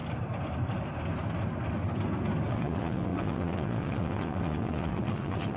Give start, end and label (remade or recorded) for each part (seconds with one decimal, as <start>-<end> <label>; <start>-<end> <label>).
0.0-2.5 recorded; 2.5-5.6 remade